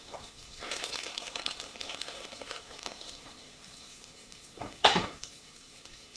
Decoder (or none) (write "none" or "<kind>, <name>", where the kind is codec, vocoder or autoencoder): codec, SNAC